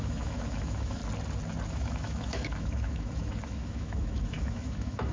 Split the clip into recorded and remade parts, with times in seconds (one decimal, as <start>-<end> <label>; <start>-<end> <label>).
0.0-1.0 remade; 1.0-1.7 recorded; 1.7-5.1 remade